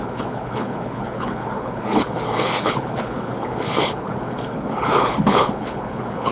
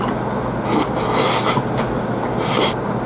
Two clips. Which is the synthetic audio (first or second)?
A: first